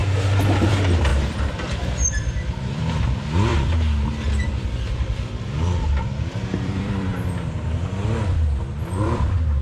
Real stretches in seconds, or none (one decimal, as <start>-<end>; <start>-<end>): 0.0-0.5; 3.5-4.5; 7.1-8.9